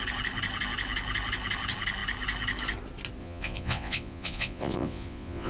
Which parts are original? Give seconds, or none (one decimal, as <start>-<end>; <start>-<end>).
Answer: 0.0-3.2